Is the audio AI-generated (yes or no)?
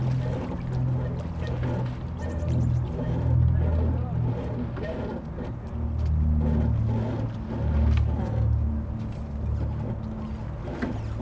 no